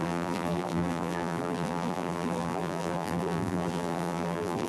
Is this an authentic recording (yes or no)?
no